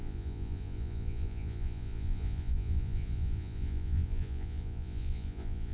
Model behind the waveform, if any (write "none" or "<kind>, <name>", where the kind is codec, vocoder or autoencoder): vocoder, Vocos